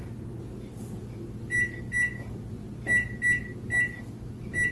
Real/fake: real